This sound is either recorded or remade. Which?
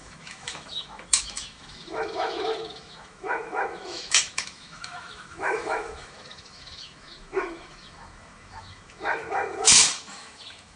remade